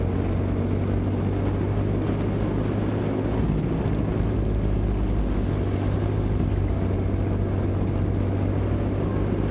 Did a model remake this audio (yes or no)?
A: no